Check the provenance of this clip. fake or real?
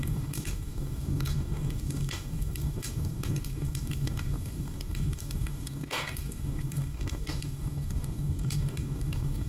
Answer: fake